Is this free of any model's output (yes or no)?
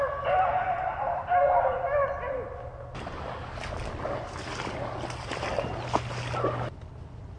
yes